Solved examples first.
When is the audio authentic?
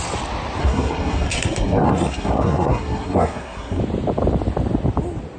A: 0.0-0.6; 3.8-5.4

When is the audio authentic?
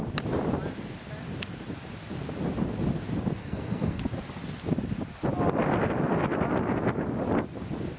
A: 0.0-3.4; 4.0-8.0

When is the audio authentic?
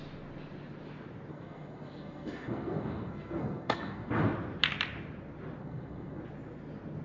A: 0.0-1.3; 4.1-5.6; 6.2-7.0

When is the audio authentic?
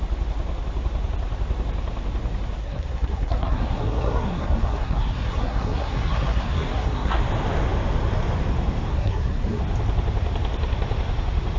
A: 0.0-2.6; 7.2-8.9; 9.6-11.6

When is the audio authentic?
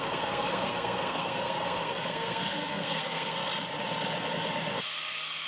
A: 3.4-4.8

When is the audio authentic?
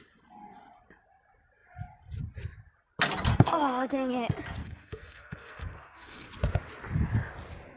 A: 0.0-3.3; 4.1-4.6; 6.3-7.8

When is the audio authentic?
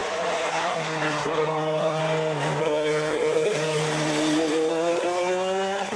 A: 0.0-0.5; 2.0-2.6; 3.8-4.7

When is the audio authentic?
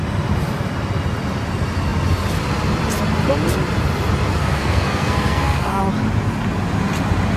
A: 0.0-4.4; 5.8-7.4